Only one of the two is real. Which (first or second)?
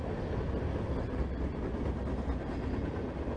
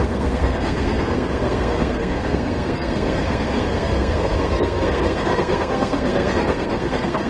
first